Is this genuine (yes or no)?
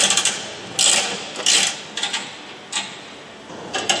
yes